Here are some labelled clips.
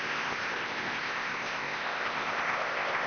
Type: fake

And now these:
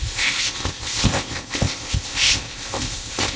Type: fake